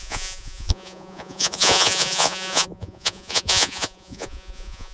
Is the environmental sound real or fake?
fake